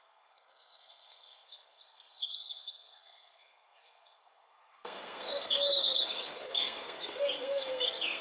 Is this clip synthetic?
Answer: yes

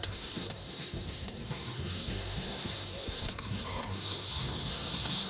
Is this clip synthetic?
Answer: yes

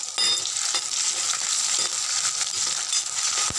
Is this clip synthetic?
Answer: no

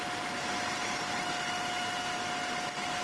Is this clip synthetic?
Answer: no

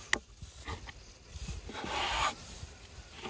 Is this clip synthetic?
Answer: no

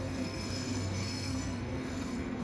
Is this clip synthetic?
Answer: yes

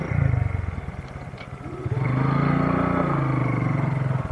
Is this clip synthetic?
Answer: no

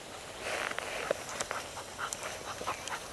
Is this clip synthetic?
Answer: no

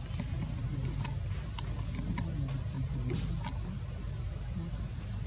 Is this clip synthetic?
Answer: no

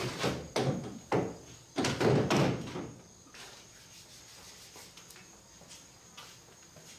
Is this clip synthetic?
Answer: no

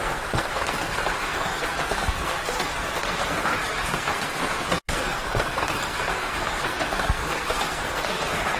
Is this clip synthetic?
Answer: yes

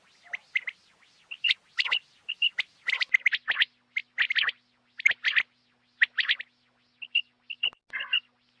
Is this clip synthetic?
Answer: no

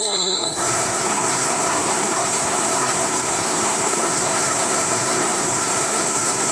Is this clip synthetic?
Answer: yes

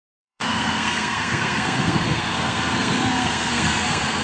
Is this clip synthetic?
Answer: yes